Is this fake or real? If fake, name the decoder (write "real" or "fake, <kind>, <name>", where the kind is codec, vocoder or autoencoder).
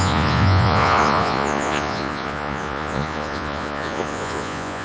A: fake, vocoder, Vocos